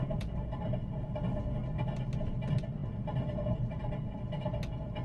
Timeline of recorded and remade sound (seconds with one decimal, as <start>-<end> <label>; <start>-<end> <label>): 0.0-5.0 recorded